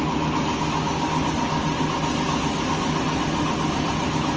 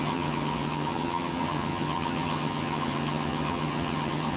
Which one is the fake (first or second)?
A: second